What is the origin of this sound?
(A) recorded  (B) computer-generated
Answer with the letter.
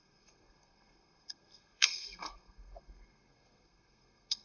B